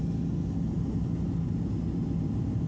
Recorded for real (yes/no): yes